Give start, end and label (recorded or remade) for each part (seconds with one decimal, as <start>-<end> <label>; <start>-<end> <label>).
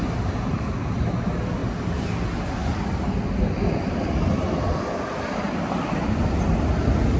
0.0-7.2 recorded